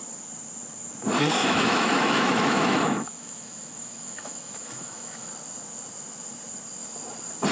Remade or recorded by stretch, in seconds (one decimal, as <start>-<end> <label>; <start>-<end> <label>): 0.0-1.4 recorded; 1.4-5.3 remade; 5.3-7.5 recorded